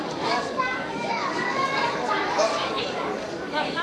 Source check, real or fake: fake